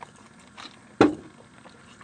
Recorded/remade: recorded